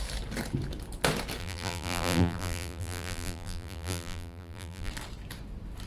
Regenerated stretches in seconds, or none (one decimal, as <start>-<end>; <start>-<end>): 1.4-4.9